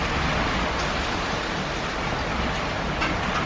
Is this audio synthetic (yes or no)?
no